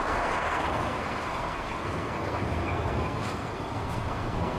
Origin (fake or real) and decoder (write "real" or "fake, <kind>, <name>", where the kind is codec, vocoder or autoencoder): fake, codec, SNAC